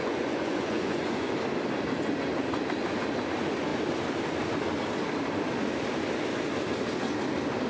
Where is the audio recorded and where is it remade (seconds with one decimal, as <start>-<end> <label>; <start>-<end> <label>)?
0.0-1.3 remade; 1.3-7.7 recorded